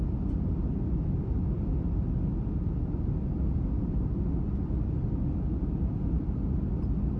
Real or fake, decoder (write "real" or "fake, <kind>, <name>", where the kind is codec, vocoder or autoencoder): real